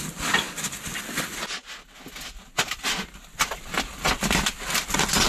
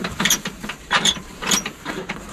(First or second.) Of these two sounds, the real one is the first